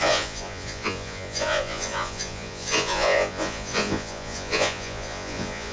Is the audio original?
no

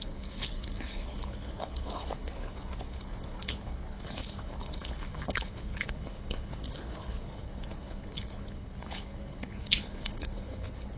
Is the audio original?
no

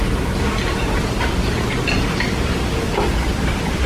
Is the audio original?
yes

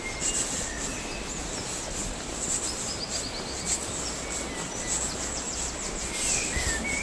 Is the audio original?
yes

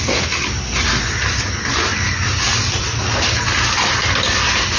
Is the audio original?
yes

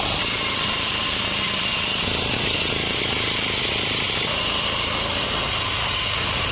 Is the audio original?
yes